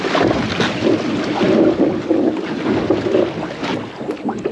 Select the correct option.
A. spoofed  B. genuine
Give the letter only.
B